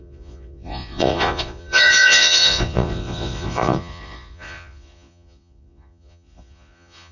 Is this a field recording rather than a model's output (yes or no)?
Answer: no